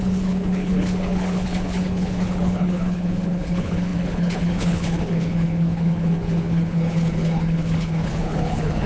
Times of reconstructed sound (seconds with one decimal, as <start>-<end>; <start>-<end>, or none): 0.0-8.9